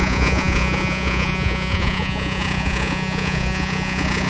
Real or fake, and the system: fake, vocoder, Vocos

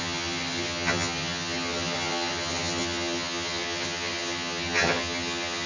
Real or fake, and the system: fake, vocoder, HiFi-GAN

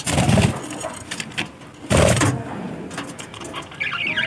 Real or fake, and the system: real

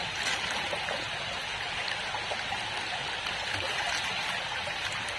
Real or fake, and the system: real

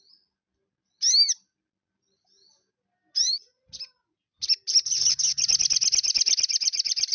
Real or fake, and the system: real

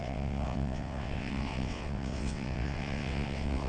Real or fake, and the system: fake, vocoder, WaveNeXt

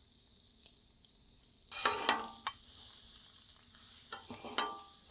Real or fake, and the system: real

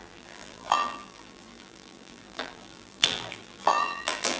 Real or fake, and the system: fake, vocoder, BigVGAN v2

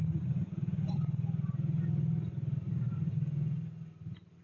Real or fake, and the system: fake, vocoder, BigVGAN v2